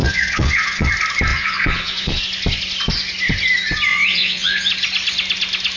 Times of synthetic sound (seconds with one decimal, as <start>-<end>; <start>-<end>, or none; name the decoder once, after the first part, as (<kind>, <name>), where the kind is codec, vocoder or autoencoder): 0.0-0.9 (vocoder, Vocos); 1.3-2.2; 3.9-4.7